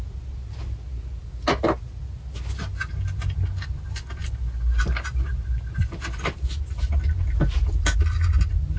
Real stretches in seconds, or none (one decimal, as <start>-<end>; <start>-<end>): 0.0-8.8

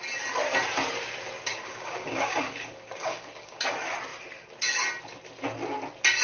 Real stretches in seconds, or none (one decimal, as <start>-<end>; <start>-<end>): 0.0-1.5; 3.6-6.2

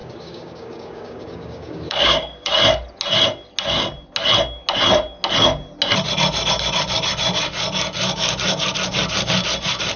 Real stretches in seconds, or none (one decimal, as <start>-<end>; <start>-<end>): 2.5-10.0

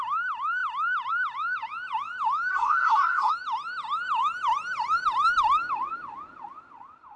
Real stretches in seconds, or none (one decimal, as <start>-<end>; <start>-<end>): 0.0-2.5; 3.3-7.2